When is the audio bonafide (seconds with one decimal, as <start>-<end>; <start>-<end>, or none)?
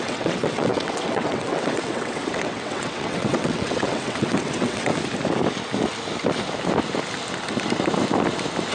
4.9-8.7